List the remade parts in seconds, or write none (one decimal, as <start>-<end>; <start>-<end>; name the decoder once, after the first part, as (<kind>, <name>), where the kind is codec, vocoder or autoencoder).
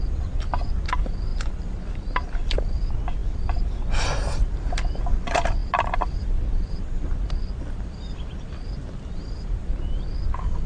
none